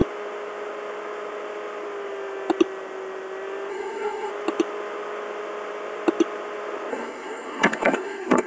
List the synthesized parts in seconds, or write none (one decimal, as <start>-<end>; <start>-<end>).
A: 3.7-4.3; 6.9-8.5